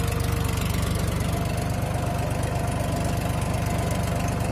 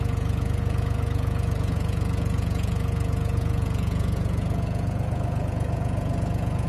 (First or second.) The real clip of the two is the first